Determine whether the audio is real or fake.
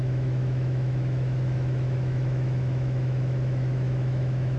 fake